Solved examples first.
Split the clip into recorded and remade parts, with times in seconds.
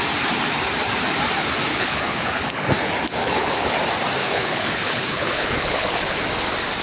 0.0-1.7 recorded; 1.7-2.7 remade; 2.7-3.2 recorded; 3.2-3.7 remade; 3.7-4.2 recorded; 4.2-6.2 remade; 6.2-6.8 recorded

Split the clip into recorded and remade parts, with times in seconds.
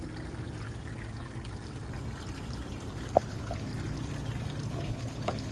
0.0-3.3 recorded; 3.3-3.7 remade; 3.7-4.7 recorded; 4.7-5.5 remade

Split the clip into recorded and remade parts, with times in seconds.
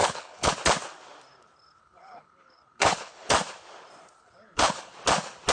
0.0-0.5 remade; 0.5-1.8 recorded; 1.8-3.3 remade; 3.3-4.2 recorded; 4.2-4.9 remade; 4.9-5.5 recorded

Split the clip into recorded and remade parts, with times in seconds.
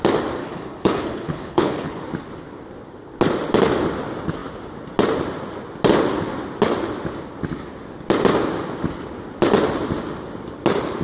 0.0-0.4 recorded; 0.4-2.0 remade; 2.0-11.0 recorded